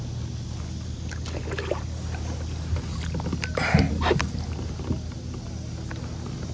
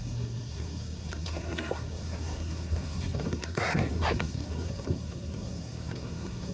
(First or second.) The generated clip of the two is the second